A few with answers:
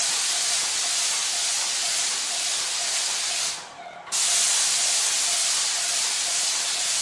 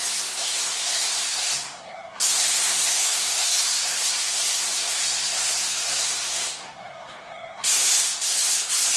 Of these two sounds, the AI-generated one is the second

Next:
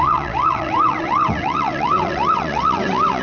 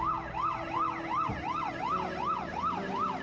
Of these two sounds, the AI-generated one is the first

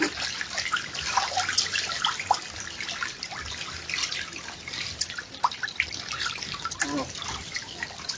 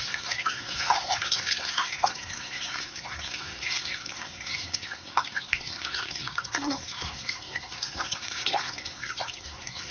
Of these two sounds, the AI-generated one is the second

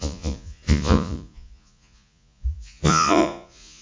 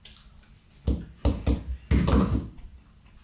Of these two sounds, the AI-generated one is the first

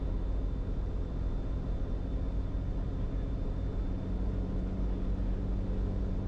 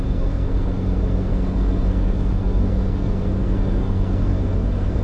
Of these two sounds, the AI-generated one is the second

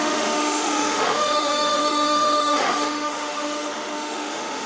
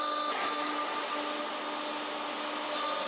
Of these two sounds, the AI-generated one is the first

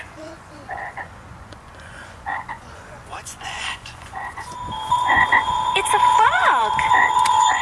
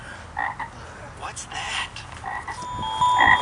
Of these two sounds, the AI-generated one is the first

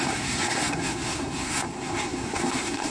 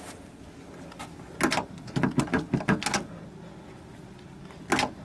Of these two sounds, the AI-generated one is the first